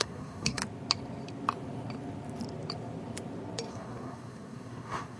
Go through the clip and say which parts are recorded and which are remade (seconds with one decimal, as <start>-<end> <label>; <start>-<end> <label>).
0.0-0.6 remade; 0.6-3.7 recorded; 3.7-5.2 remade